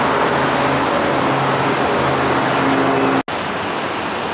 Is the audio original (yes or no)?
yes